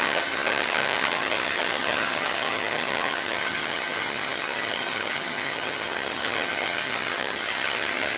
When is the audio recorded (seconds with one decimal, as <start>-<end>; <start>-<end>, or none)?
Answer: none